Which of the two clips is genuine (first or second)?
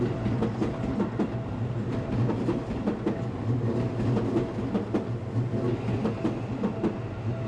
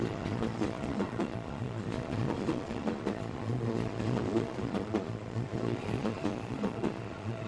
first